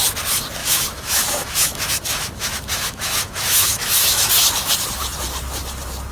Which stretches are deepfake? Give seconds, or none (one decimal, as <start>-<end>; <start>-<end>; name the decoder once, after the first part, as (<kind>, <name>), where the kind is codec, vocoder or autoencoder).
0.6-4.3 (autoencoder, DAC-VAE)